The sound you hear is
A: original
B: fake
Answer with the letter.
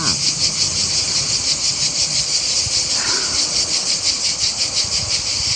A